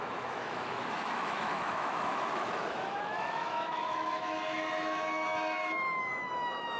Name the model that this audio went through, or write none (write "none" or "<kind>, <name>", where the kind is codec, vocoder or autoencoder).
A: autoencoder, DAC-VAE